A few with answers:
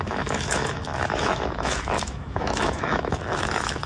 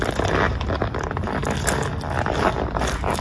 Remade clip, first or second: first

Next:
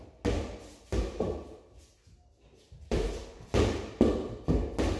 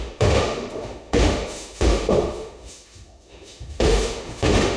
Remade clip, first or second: second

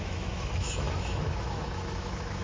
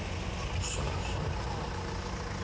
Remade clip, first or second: first